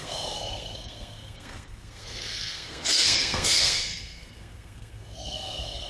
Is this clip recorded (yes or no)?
no